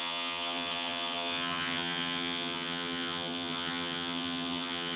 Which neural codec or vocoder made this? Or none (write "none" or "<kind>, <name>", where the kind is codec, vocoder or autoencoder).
vocoder, HiFi-GAN